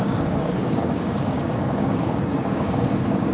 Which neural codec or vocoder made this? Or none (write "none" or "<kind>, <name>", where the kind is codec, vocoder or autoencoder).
codec, DAC